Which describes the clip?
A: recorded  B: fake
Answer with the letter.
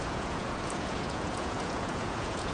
B